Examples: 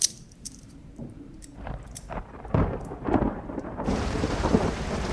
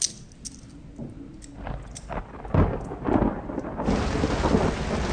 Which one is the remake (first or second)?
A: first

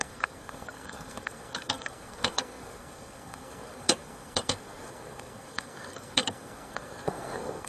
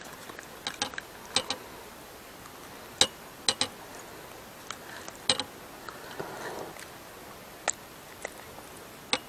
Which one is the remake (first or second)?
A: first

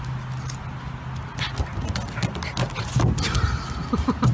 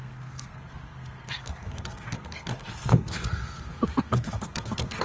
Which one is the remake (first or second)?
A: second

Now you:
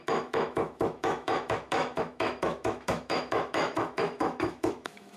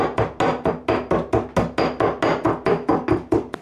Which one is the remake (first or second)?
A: first